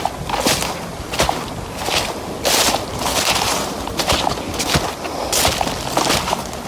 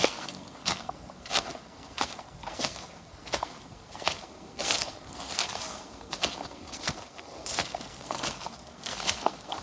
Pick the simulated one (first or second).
second